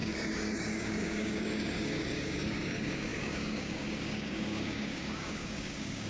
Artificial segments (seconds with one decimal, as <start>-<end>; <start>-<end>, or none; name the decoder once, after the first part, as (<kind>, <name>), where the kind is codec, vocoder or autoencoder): 0.0-6.1 (codec, DAC)